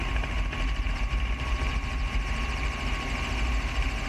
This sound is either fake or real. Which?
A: fake